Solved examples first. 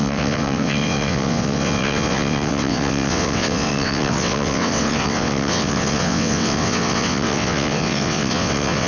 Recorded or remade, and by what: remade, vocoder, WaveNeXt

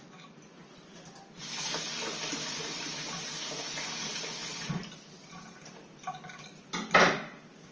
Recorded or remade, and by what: recorded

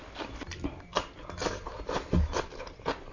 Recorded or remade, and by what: remade, vocoder, BigVGAN v2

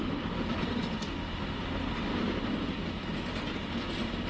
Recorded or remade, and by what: recorded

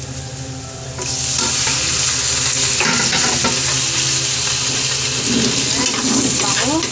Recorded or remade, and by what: recorded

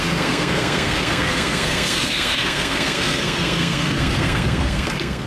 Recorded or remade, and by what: remade, codec, SNAC